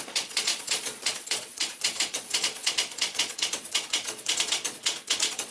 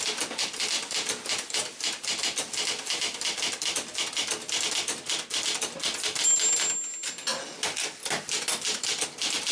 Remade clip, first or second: first